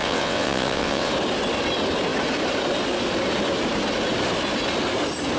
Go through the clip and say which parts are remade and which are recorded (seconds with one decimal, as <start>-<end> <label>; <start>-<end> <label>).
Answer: 0.0-1.1 remade; 1.1-5.4 recorded